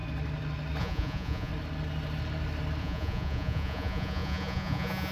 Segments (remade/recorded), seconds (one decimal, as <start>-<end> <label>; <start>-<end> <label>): 0.0-0.8 recorded; 0.8-1.5 remade; 1.5-2.8 recorded; 2.8-5.1 remade